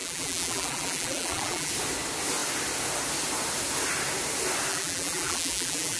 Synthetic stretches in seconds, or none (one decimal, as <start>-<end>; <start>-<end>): 0.0-1.7; 4.7-6.0